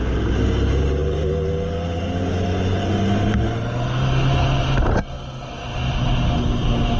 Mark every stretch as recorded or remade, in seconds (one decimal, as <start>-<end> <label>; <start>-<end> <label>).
0.0-7.0 recorded